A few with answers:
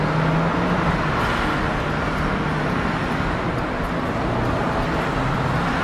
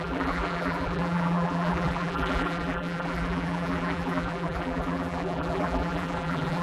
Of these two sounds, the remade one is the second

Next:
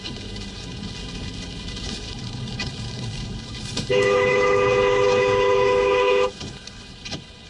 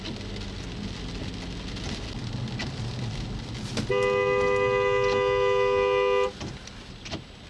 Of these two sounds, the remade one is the first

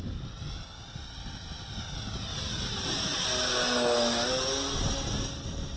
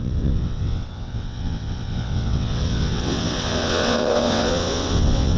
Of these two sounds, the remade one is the second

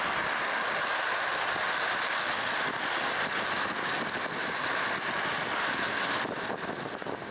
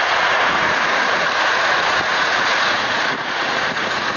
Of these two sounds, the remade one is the second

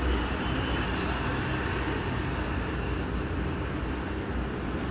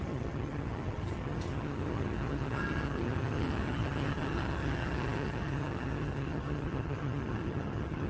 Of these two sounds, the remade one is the second